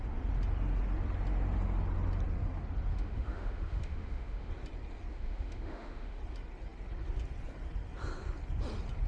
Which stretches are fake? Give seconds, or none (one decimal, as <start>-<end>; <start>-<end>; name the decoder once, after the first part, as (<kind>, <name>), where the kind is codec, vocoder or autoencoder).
2.9-4.5 (autoencoder, DAC-VAE); 5.1-6.2